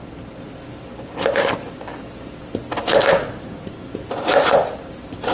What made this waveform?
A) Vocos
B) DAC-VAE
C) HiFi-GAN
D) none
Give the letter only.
D